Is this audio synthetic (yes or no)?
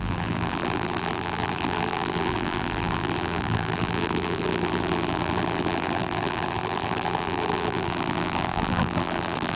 yes